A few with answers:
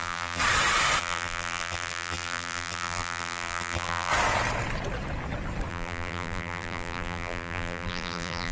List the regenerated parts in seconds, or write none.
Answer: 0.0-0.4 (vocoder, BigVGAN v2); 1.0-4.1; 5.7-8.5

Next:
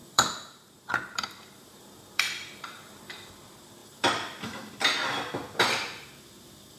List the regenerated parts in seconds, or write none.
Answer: 0.0-3.3 (vocoder, BigVGAN v2); 3.8-4.7

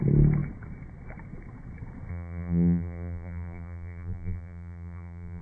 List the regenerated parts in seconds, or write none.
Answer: 2.1-5.4 (vocoder, BigVGAN v2)

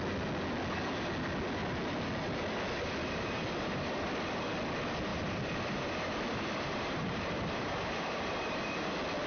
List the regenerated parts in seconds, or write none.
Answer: 3.0-4.1 (vocoder, BigVGAN v2); 5.1-8.9

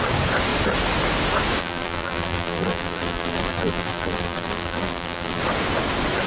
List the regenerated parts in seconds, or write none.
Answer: 1.6-5.4 (vocoder, BigVGAN v2)

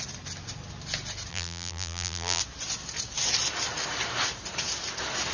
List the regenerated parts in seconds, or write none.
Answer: 1.3-2.4 (vocoder, BigVGAN v2)

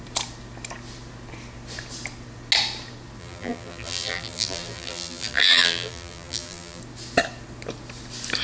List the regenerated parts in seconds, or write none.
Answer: 3.2-6.8 (vocoder, BigVGAN v2)